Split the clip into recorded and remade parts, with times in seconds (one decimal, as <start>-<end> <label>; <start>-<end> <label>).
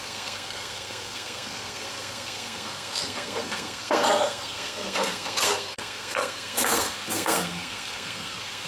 0.0-8.7 remade